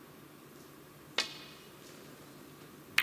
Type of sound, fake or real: real